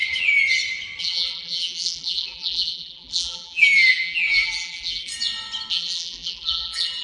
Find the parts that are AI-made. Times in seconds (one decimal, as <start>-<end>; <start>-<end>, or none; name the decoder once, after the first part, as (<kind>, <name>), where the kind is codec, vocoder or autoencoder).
1.0-5.1 (vocoder, BigVGAN v2); 5.7-7.0